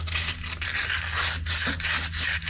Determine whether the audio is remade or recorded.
recorded